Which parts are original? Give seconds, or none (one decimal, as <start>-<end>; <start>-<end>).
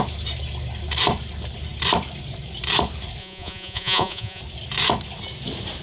0.0-3.2; 4.4-5.8